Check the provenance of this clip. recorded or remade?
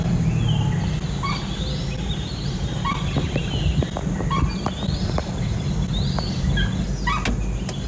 recorded